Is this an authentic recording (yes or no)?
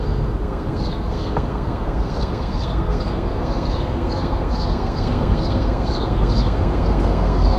no